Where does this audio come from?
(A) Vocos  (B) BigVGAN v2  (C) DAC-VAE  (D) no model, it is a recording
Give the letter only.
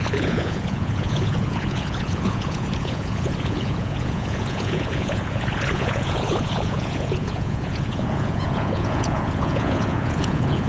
A